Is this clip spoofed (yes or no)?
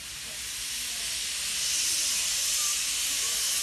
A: no